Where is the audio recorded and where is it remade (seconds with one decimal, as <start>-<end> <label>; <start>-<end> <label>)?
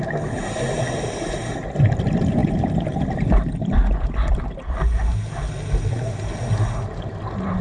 0.0-7.6 recorded